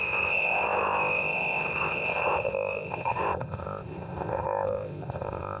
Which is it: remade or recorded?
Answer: remade